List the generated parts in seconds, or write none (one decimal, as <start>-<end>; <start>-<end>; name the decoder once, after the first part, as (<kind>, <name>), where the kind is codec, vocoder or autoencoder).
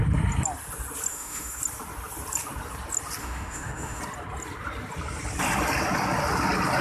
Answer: 1.1-1.6 (autoencoder, DAC-VAE); 3.2-4.0